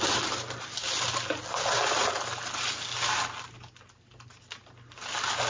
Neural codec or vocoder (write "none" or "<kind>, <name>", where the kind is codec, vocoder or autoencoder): none